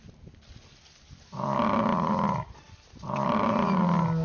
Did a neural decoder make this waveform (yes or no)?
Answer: no